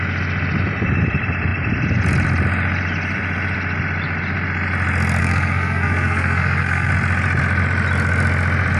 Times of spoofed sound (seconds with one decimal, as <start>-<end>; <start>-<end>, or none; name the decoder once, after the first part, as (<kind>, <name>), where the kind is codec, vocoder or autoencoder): 5.2-6.9 (codec, SNAC)